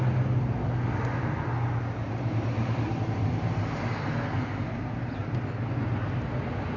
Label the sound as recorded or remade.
recorded